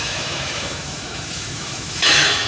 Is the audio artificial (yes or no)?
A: yes